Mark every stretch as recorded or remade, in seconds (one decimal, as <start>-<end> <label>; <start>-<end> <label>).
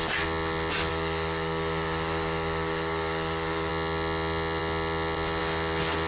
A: 0.0-0.9 recorded; 0.9-3.7 remade; 3.7-6.1 recorded